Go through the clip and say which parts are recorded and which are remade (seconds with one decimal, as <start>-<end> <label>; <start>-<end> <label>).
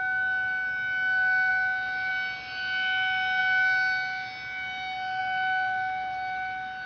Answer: 0.0-6.9 recorded